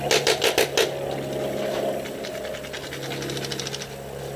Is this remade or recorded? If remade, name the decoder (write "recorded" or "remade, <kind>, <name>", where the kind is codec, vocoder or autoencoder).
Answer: recorded